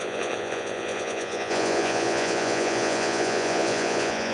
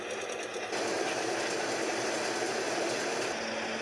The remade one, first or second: first